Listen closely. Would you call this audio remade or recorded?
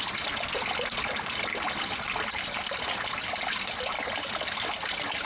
recorded